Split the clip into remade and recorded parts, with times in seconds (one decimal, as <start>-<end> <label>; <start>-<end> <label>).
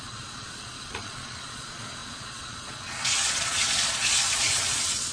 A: 0.0-5.1 remade